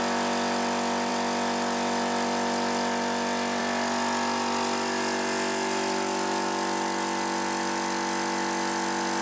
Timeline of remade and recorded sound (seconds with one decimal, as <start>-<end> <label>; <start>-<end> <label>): 0.0-9.2 recorded

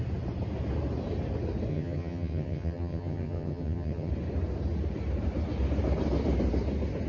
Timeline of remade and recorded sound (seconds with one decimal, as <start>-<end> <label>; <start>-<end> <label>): 0.0-1.7 recorded; 1.7-4.1 remade; 4.1-7.1 recorded

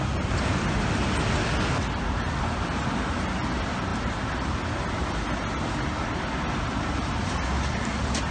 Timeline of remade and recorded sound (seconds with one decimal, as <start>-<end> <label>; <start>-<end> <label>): 0.0-8.3 recorded

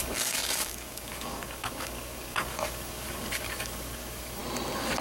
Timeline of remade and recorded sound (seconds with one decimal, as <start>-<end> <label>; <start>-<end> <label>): 0.0-4.4 remade; 4.4-5.0 recorded

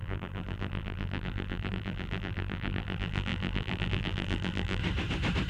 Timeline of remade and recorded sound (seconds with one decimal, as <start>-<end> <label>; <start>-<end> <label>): 0.0-4.8 remade; 4.8-5.5 recorded